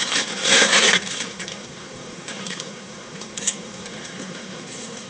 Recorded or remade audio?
remade